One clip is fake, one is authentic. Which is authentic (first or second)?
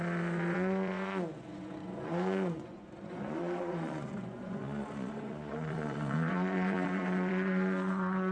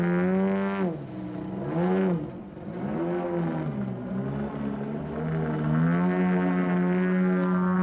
second